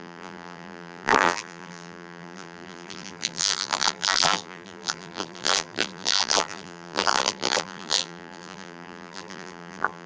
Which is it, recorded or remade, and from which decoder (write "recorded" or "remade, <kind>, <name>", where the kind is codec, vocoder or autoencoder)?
remade, vocoder, BigVGAN v2